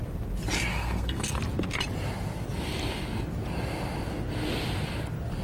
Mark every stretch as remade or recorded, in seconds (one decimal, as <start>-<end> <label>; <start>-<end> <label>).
0.0-0.7 recorded; 0.7-1.4 remade; 1.4-5.4 recorded